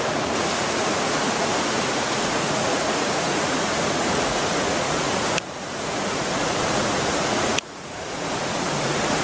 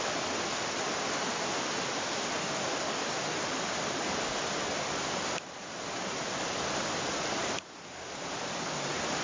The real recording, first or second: second